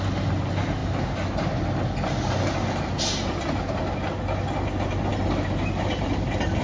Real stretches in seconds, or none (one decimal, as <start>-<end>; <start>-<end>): 0.0-6.6